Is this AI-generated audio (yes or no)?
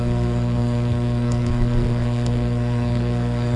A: yes